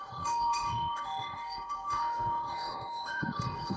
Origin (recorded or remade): remade